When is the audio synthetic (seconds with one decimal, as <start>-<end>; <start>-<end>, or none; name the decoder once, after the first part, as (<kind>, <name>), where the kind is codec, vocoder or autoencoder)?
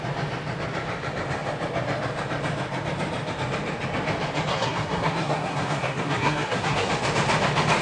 4.5-6.9 (codec, SNAC)